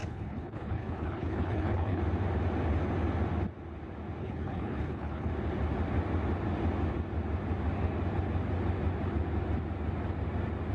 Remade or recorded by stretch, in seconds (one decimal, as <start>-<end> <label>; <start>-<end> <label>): 0.0-2.0 remade; 2.0-4.2 recorded; 4.2-5.3 remade; 5.3-10.7 recorded